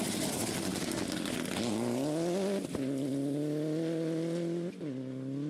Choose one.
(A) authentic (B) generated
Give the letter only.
A